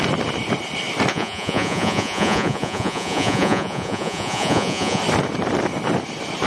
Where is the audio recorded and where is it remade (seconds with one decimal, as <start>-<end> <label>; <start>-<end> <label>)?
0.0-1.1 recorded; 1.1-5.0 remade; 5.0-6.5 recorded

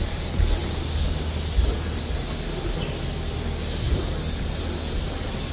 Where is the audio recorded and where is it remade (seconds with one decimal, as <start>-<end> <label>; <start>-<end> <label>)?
0.0-5.5 recorded

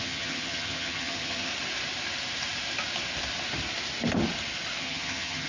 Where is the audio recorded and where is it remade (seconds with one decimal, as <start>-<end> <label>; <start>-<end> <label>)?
0.0-1.5 remade; 1.5-4.8 recorded; 4.8-5.5 remade

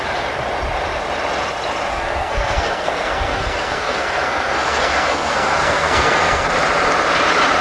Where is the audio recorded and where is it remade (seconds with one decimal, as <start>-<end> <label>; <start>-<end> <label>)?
0.0-1.9 recorded; 1.9-6.5 remade; 6.5-7.6 recorded